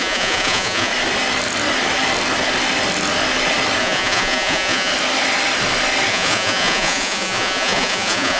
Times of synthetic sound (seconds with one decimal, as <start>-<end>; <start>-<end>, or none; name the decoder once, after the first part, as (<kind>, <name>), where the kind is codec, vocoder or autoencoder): 0.0-0.9 (vocoder, Vocos); 3.8-4.9; 6.1-8.4